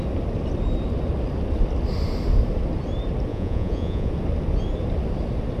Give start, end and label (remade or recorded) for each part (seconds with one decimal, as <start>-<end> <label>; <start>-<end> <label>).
0.0-3.3 recorded; 3.3-4.1 remade; 4.1-5.6 recorded